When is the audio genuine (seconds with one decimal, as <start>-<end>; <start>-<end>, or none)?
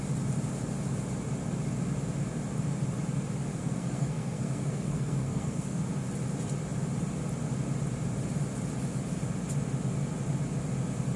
0.0-3.5; 5.8-11.2